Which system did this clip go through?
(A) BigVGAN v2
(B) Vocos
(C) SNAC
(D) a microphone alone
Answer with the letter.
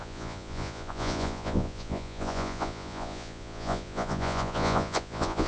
B